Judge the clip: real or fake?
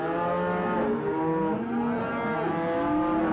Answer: real